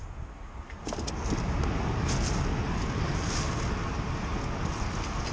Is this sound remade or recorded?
recorded